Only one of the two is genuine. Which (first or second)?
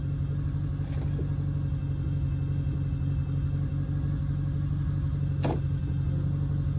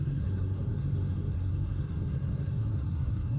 first